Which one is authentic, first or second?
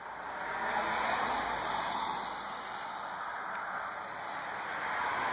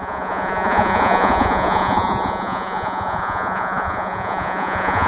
first